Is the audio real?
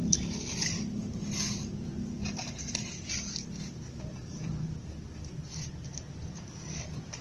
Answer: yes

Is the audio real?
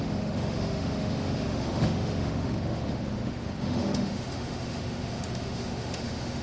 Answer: no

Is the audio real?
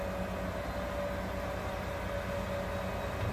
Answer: yes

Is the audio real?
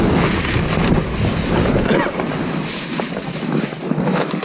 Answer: yes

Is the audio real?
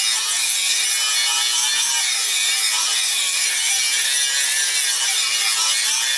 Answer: yes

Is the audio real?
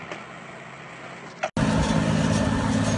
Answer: yes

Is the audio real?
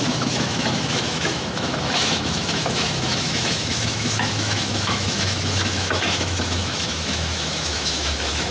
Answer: no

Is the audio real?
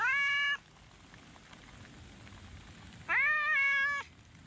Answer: yes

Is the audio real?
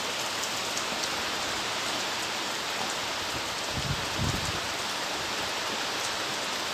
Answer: yes